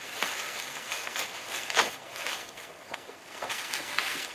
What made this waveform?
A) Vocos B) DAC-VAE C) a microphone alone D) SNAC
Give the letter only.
D